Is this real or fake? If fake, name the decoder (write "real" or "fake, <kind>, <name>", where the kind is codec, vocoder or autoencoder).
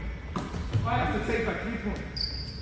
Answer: real